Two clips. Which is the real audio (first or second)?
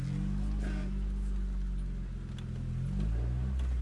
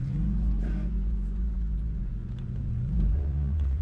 first